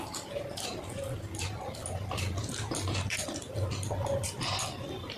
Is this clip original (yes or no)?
yes